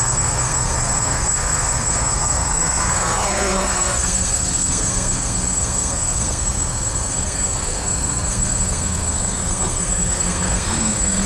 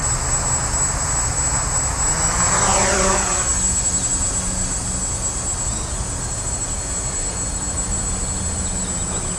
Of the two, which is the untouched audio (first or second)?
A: second